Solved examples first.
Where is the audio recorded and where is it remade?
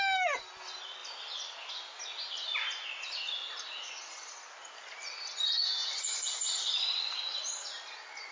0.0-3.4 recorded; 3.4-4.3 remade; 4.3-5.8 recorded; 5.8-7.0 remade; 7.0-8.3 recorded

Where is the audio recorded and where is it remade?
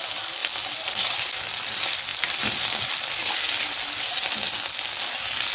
0.0-5.5 recorded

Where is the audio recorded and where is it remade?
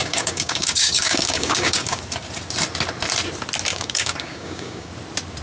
0.0-2.0 remade; 2.0-3.7 recorded; 3.7-4.9 remade; 4.9-5.4 recorded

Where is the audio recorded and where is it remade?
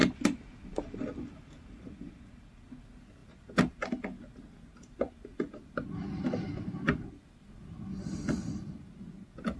0.0-9.6 recorded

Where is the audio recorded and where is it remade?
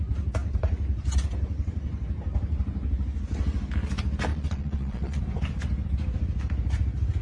0.0-4.3 recorded; 4.3-5.2 remade; 5.2-7.2 recorded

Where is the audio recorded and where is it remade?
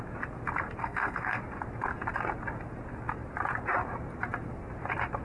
0.0-0.8 recorded; 0.8-1.4 remade; 1.4-5.2 recorded